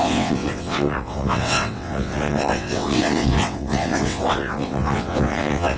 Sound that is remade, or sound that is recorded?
remade